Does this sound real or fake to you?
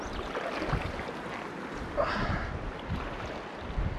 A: real